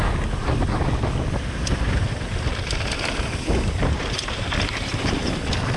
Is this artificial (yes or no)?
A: no